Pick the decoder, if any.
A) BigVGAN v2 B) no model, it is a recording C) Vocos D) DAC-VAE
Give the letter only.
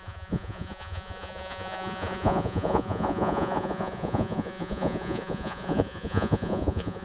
C